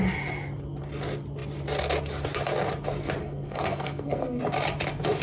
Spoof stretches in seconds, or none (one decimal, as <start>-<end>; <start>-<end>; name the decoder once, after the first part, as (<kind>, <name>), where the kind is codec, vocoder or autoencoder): 3.2-4.4 (codec, SNAC)